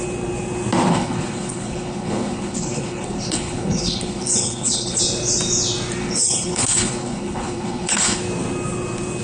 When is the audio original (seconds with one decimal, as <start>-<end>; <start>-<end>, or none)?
0.0-0.9; 5.0-6.0; 8.2-9.2